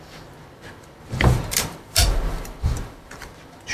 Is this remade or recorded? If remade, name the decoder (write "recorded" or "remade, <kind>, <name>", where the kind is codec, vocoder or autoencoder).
remade, vocoder, BigVGAN v2